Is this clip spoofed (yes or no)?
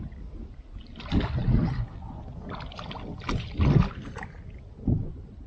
no